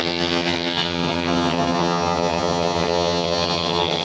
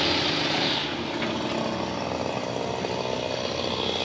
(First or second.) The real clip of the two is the second